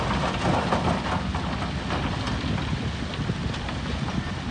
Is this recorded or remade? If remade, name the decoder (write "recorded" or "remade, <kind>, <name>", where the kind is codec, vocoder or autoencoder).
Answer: recorded